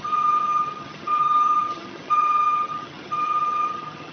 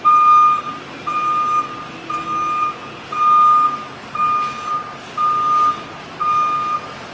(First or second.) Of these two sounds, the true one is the second